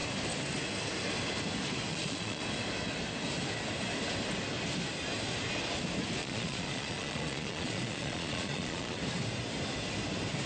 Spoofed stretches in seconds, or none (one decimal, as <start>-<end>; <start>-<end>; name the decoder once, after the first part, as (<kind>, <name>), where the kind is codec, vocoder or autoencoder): 1.9-2.4 (vocoder, Vocos); 6.2-9.0